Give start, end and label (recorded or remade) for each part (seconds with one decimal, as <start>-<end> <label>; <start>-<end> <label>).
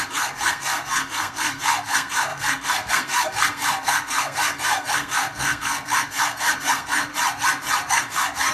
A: 0.0-7.1 remade; 7.1-7.9 recorded; 7.9-8.5 remade